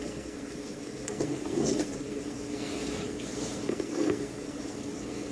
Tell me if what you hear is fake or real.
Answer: fake